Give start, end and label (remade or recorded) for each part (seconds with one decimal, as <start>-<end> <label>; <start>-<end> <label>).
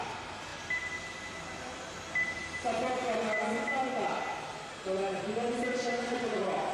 0.0-6.7 recorded